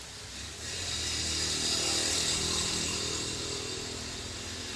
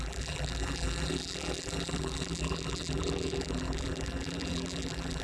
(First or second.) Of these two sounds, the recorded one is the first